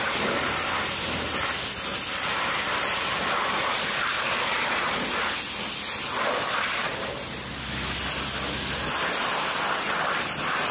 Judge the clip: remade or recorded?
recorded